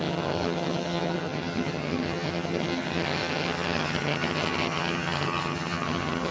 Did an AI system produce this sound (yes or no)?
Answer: yes